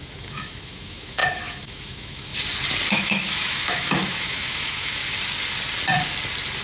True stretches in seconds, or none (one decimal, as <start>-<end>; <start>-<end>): 2.3-2.9; 5.0-6.6

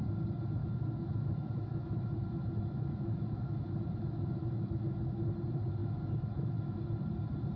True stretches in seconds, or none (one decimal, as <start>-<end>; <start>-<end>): 0.0-0.6; 5.2-5.8; 6.8-7.6

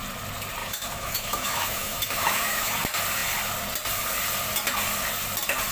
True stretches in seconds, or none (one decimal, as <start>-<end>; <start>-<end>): 0.0-0.6; 2.8-5.7